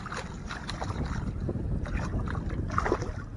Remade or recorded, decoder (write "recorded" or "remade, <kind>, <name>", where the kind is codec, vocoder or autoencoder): recorded